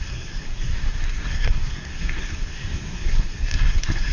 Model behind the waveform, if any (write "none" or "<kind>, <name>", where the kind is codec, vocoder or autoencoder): codec, SNAC